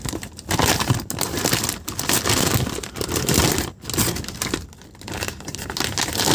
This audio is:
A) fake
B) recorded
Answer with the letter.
B